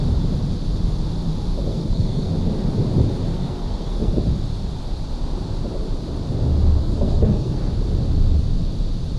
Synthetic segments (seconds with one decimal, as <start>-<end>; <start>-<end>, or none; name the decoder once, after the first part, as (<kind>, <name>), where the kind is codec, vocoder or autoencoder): 1.7-2.3 (codec, SNAC); 3.3-4.2; 6.8-7.7